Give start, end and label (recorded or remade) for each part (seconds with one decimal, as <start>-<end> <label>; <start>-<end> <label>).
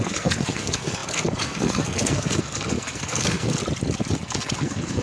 0.0-3.6 remade; 3.6-4.1 recorded; 4.1-5.0 remade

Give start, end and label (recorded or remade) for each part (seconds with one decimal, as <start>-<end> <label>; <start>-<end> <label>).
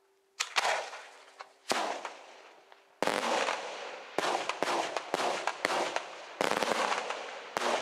0.0-1.6 recorded; 1.6-2.5 remade; 2.5-5.5 recorded; 5.5-7.8 remade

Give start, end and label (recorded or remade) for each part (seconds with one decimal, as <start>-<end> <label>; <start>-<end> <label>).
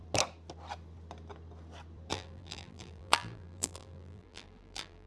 0.0-2.1 recorded; 2.1-5.1 remade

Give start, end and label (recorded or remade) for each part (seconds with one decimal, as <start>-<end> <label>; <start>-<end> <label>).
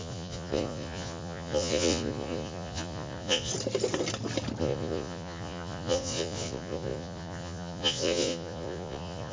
0.0-3.5 remade; 3.5-4.6 recorded; 4.6-9.3 remade